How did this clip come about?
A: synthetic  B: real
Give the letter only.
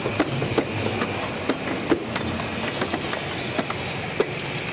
B